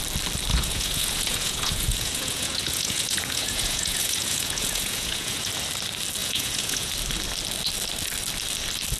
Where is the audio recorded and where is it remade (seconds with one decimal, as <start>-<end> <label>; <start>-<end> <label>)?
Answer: 0.0-0.5 recorded; 0.5-5.5 remade; 5.5-6.2 recorded; 6.2-6.9 remade; 6.9-9.0 recorded